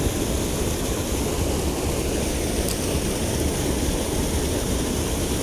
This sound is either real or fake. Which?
real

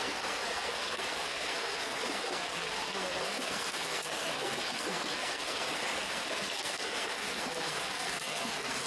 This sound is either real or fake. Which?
fake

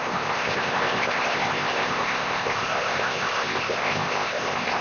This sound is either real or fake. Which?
fake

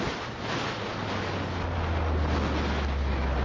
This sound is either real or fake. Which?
real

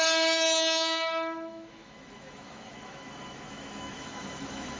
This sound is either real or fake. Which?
fake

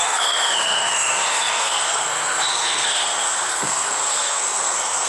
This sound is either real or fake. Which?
fake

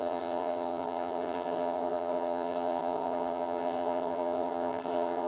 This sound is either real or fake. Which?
fake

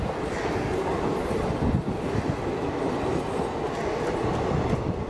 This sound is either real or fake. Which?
real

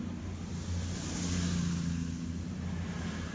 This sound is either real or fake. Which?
real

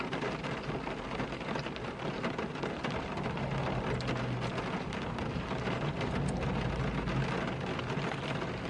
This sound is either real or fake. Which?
real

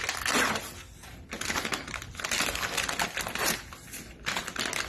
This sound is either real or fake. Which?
real